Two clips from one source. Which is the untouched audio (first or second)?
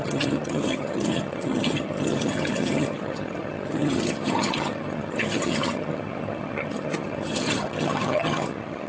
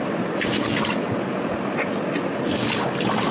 second